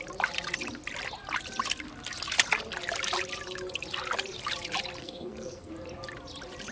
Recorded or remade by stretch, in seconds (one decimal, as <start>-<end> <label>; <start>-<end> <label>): 0.0-5.0 recorded; 5.0-5.7 remade; 5.7-6.7 recorded